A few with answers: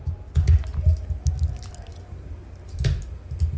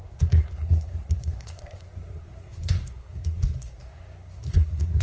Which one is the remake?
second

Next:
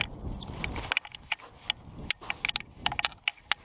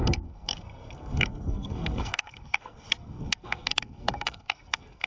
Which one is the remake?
second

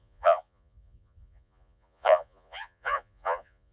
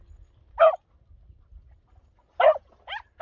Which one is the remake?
first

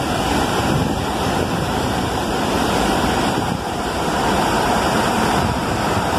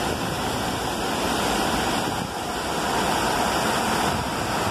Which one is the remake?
first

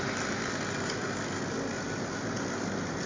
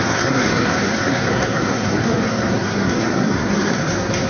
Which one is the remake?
second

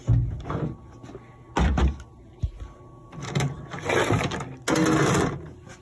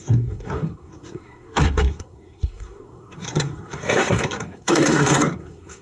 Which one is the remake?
second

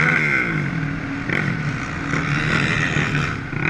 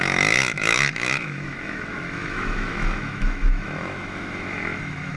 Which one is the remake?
second